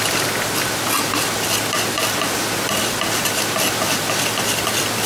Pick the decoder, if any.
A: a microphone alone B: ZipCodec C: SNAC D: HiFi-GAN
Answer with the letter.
A